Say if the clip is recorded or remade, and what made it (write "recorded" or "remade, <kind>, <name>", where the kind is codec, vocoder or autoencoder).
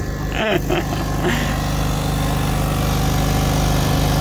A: recorded